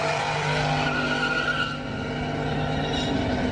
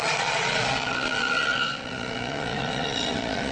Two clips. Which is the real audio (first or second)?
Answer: first